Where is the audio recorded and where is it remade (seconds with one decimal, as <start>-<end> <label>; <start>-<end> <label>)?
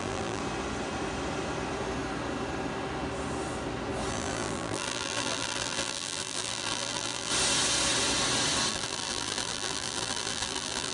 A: 0.0-0.4 remade; 0.4-4.1 recorded; 4.1-7.3 remade; 7.3-8.7 recorded; 8.7-10.9 remade